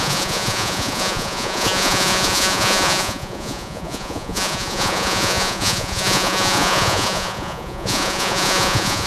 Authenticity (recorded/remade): remade